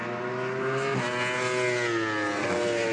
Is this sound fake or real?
real